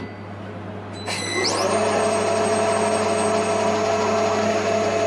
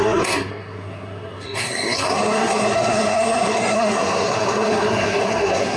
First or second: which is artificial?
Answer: second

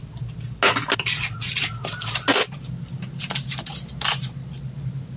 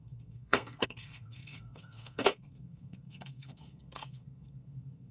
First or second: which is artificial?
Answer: second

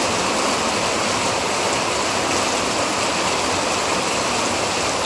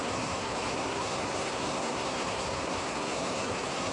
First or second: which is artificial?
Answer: second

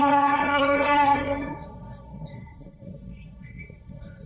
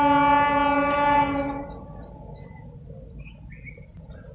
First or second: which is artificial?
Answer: first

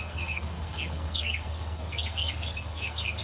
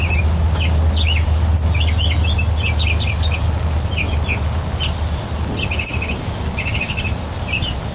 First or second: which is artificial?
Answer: first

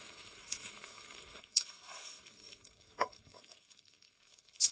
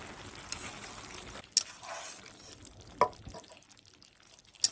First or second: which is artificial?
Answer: first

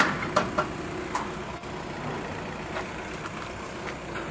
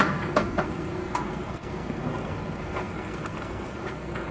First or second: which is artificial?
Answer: second